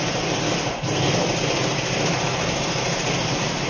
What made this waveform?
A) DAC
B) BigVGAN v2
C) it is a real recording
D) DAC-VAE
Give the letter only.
C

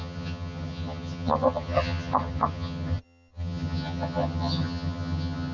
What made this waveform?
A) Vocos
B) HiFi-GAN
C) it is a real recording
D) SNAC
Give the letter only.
B